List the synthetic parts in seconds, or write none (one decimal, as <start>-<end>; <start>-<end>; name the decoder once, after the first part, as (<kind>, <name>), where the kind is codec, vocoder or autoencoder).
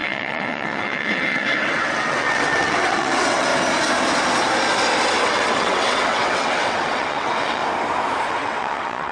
0.0-3.5 (vocoder, WaveNeXt); 5.2-7.6; 8.3-9.1